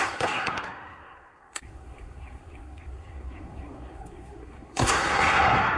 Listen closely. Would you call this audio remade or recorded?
remade